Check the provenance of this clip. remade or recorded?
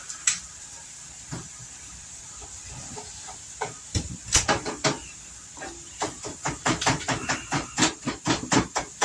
remade